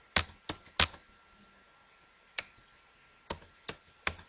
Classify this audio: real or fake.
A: real